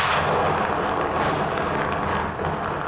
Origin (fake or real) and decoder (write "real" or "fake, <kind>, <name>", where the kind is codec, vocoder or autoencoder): real